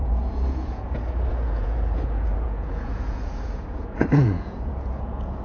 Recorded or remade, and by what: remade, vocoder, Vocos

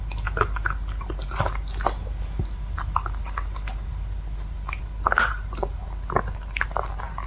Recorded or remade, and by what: recorded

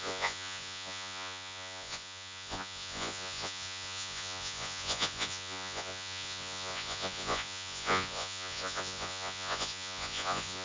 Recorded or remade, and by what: remade, vocoder, Vocos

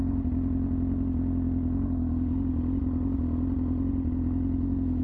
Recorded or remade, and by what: recorded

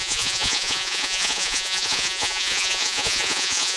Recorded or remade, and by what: remade, vocoder, Vocos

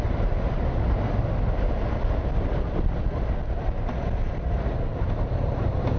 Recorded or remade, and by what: recorded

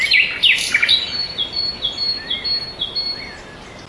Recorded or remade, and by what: recorded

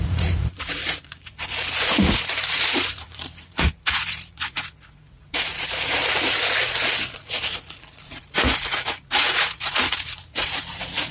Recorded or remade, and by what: remade, vocoder, Vocos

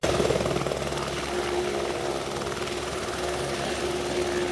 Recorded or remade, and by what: recorded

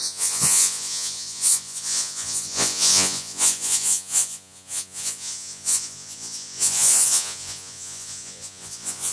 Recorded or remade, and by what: remade, vocoder, Vocos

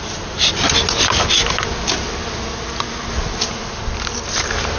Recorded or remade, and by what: recorded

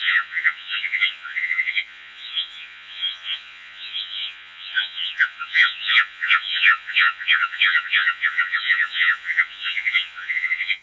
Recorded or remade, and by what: remade, vocoder, Vocos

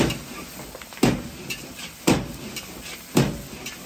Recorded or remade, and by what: recorded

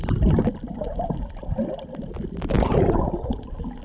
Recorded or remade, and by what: recorded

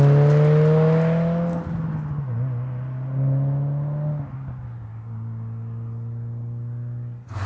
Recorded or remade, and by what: recorded